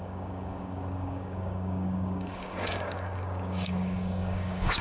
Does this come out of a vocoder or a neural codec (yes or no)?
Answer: yes